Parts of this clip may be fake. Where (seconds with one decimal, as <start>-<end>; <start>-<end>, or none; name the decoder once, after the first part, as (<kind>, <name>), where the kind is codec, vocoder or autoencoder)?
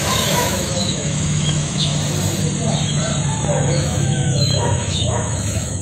0.0-1.9 (autoencoder, DAC-VAE); 3.5-5.8